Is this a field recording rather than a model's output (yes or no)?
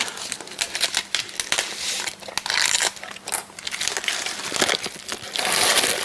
yes